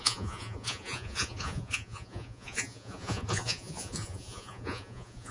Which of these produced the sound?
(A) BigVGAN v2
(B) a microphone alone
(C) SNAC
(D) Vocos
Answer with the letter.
D